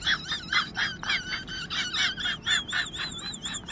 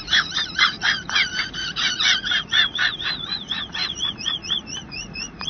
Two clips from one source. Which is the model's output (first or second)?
second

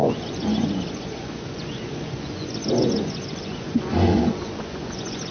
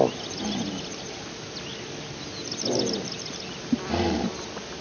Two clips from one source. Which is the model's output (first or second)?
first